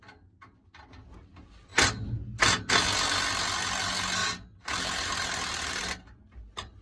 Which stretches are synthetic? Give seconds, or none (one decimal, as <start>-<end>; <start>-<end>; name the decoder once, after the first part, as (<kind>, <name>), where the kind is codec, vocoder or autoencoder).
none